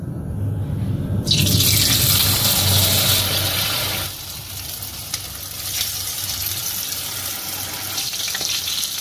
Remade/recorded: recorded